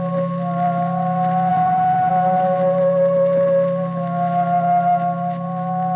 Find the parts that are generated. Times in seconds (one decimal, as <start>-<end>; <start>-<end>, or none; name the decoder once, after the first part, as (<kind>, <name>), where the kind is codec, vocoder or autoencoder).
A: 1.5-2.1 (autoencoder, DAC-VAE)